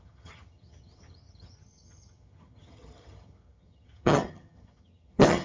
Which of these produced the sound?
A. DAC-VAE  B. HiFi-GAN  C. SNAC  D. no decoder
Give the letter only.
B